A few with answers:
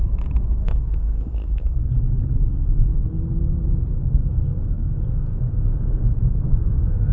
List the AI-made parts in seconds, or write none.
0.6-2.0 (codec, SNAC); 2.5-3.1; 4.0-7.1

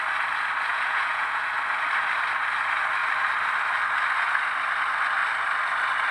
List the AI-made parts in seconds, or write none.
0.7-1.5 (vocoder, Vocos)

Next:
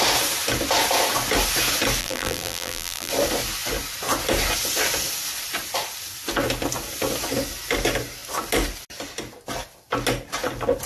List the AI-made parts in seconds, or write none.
2.0-3.1 (vocoder, BigVGAN v2)